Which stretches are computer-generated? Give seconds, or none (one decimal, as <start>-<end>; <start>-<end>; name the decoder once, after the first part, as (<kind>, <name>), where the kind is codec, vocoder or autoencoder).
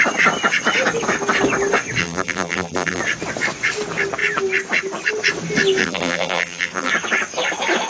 2.0-3.0 (vocoder, BigVGAN v2); 5.8-6.9